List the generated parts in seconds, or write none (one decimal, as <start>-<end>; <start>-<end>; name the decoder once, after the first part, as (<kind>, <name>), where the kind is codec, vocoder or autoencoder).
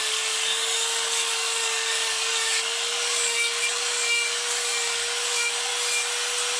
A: 0.0-5.7 (codec, DAC)